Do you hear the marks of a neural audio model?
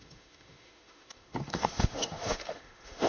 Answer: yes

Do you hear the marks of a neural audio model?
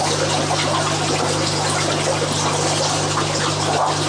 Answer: no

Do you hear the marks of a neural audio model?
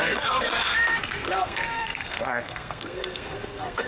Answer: yes